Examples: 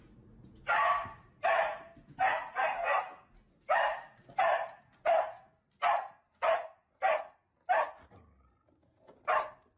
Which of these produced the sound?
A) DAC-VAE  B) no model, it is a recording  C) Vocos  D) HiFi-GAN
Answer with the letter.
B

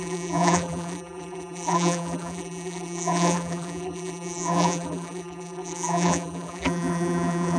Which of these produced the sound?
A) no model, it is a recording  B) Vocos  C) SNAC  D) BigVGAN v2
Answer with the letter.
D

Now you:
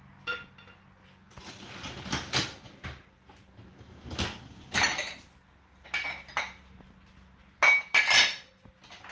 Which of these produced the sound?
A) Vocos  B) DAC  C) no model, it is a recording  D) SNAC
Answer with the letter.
C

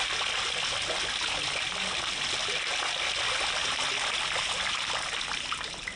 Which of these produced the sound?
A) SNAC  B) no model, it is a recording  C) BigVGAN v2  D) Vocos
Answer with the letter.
B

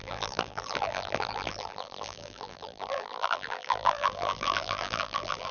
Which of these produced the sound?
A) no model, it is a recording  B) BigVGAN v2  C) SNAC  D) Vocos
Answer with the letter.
B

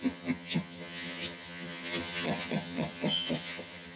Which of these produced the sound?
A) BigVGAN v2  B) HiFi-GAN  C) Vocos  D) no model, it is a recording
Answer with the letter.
B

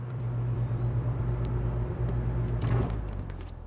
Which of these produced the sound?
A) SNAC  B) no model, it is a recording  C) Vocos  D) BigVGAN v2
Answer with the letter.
D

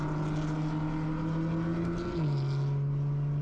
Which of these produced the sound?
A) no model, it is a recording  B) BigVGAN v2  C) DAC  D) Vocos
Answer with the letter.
A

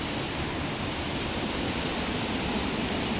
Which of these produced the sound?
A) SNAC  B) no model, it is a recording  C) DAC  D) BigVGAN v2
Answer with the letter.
D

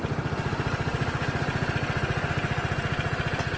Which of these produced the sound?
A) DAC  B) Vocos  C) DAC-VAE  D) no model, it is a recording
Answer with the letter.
D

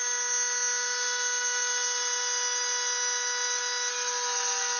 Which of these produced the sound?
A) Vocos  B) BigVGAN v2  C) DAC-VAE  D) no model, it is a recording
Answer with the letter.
D